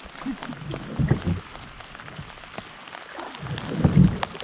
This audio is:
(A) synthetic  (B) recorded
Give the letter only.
B